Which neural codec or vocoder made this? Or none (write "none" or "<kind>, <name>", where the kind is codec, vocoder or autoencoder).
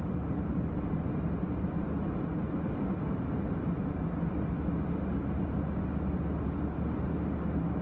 none